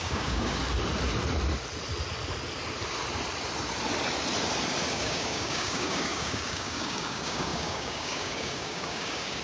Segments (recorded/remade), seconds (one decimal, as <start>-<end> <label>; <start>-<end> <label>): 0.0-0.6 remade; 0.6-4.9 recorded; 4.9-9.4 remade